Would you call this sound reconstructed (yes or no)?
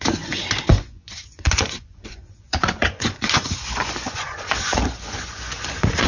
yes